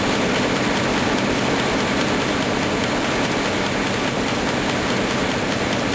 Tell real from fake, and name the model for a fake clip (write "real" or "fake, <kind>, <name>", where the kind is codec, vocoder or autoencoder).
real